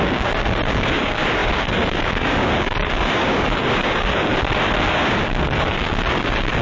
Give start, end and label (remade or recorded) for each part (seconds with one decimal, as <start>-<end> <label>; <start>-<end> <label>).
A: 0.0-4.3 remade; 4.3-4.9 recorded; 4.9-6.6 remade